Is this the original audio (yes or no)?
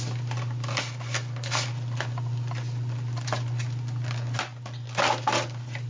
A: yes